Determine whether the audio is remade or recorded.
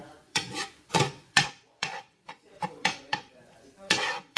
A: remade